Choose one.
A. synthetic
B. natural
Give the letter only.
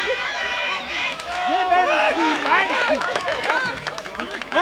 A